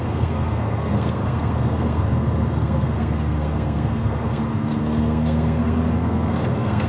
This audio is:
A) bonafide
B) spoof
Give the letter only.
B